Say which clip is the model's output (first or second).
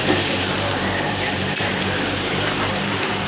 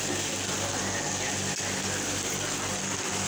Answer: first